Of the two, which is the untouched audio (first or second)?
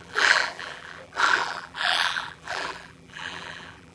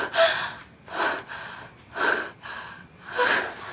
second